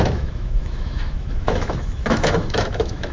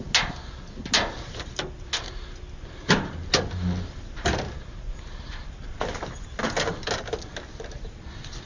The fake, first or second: first